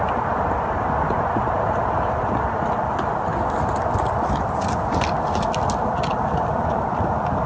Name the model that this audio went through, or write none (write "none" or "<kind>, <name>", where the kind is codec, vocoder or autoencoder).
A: none